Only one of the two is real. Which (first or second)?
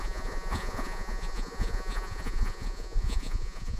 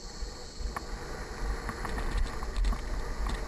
second